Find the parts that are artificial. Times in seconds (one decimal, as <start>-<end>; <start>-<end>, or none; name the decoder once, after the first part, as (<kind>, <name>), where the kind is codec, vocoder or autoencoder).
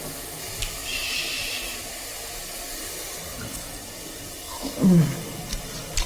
0.8-4.3 (vocoder, BigVGAN v2)